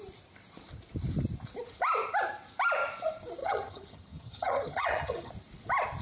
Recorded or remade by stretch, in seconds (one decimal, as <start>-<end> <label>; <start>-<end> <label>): 0.0-3.4 recorded; 3.4-5.3 remade; 5.3-6.0 recorded